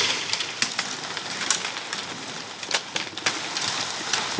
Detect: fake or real real